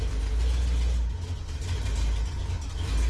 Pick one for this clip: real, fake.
real